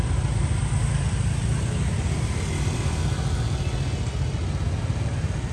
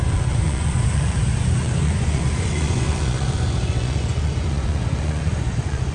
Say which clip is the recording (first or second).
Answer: first